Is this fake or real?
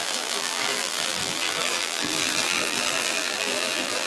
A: fake